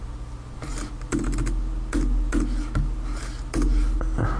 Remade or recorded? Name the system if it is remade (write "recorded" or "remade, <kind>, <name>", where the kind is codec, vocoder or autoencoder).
recorded